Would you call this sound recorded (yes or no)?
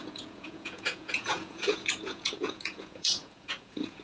no